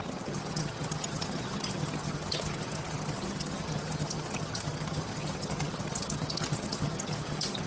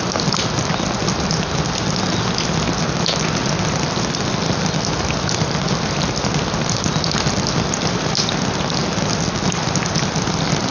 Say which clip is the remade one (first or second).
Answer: first